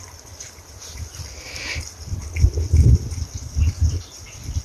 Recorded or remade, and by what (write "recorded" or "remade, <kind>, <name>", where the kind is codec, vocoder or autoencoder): recorded